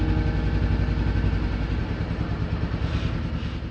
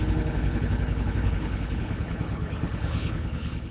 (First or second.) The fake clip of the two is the second